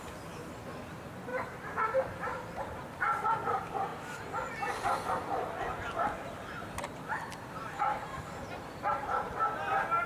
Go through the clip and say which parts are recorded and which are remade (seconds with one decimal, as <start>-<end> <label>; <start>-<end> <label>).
0.0-1.3 recorded; 1.3-2.6 remade; 2.6-3.9 recorded; 3.9-4.5 remade; 4.5-5.7 recorded; 5.7-9.3 remade; 9.3-10.1 recorded